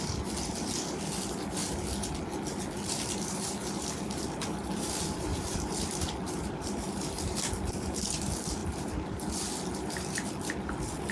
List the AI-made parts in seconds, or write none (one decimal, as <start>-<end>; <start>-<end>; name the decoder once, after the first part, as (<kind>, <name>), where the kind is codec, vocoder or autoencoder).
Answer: 0.0-1.6 (vocoder, BigVGAN v2); 2.9-11.1